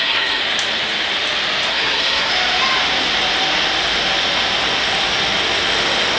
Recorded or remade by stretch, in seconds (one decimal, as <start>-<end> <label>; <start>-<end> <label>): 0.0-0.4 remade; 0.4-1.7 recorded; 1.7-2.3 remade; 2.3-6.2 recorded